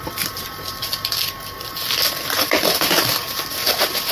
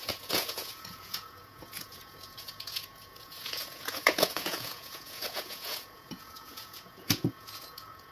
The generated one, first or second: second